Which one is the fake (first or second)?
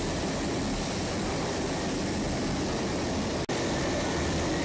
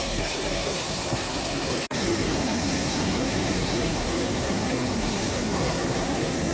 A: second